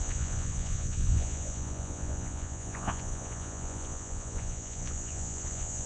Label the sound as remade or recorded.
remade